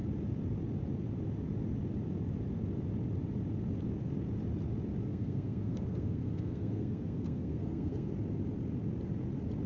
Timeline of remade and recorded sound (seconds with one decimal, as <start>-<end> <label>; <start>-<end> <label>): 0.0-5.1 recorded; 5.1-8.1 remade; 8.1-9.7 recorded